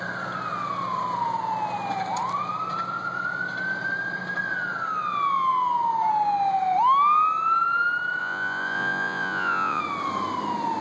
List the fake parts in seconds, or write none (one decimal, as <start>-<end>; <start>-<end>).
8.2-9.8